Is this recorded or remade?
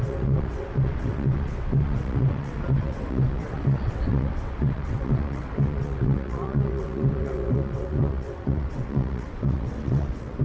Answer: remade